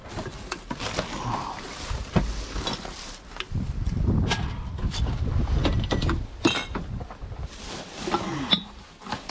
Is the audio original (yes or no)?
yes